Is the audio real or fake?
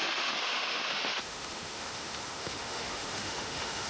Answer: fake